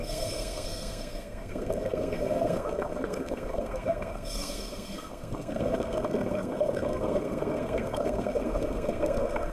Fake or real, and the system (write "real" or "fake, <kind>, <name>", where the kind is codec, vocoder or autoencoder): fake, codec, SNAC